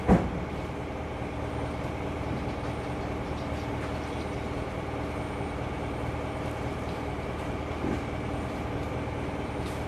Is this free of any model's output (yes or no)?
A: yes